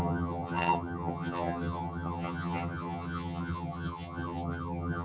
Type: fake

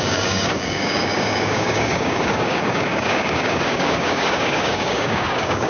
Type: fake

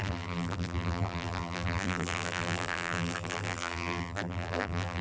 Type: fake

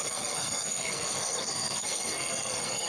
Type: fake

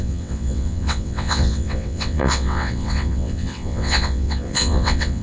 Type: fake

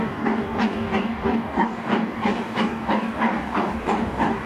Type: fake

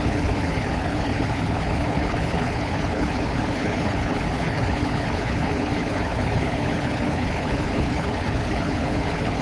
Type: fake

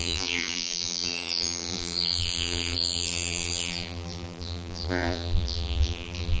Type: fake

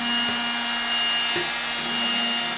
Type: real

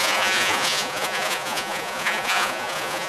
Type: fake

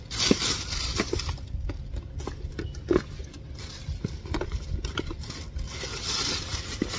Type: real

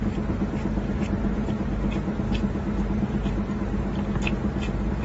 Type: real